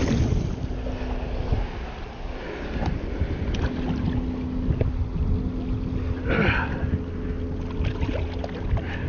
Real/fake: real